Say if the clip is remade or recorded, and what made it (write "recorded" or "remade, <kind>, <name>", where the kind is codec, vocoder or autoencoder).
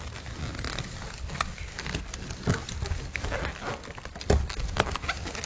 recorded